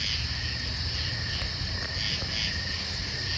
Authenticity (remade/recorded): recorded